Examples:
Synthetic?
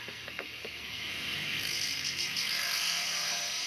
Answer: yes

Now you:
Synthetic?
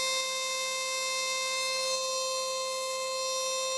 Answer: no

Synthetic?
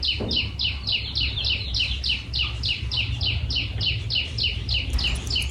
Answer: no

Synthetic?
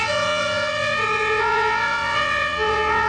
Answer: yes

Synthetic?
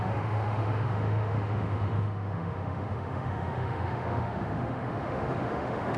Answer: yes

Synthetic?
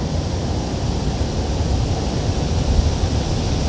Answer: no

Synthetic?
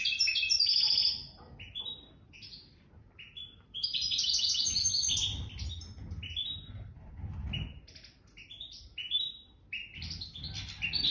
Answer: no